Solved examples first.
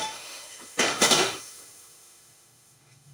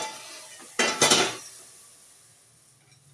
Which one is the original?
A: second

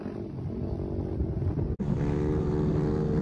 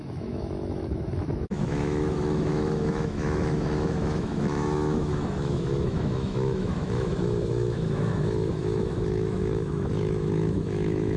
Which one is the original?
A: first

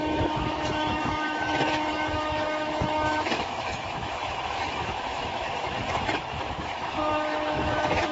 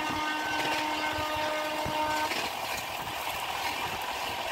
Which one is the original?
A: second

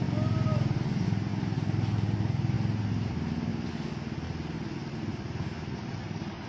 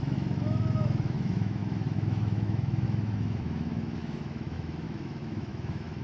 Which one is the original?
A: first